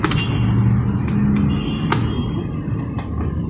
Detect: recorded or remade recorded